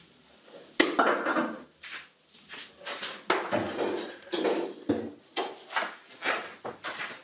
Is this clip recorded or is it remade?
recorded